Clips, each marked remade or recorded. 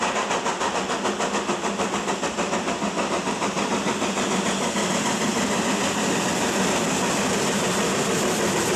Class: recorded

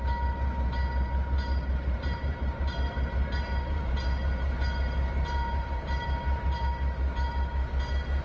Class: remade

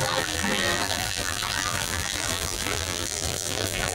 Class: remade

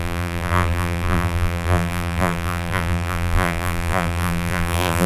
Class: remade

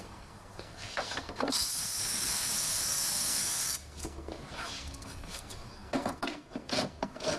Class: remade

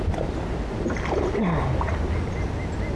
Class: recorded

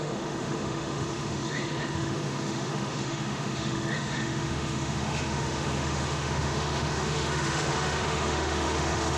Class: remade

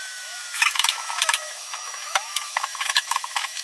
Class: remade